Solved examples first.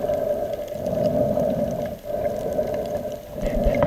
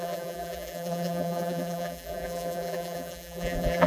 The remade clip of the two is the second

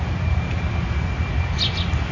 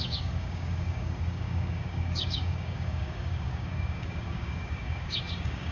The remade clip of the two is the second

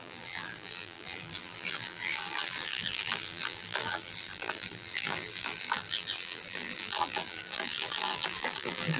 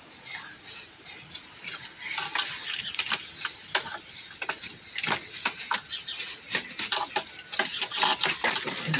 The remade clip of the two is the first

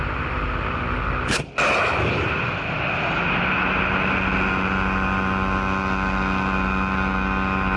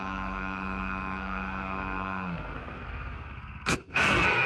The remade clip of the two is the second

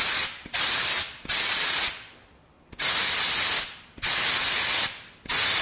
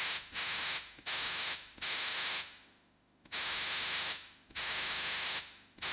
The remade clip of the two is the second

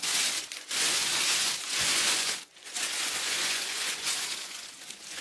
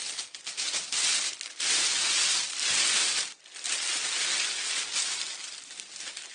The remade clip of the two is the first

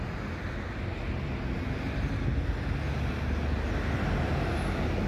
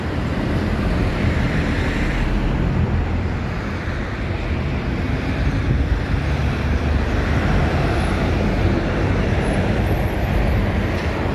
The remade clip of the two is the second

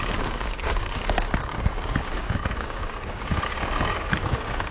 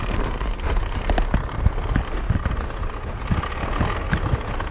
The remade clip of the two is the first